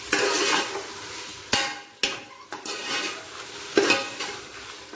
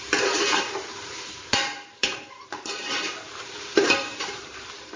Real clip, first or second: first